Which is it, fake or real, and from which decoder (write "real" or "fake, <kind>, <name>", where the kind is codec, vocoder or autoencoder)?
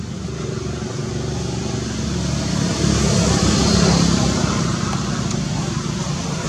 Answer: real